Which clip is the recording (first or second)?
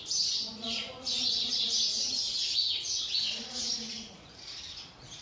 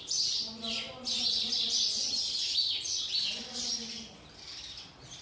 second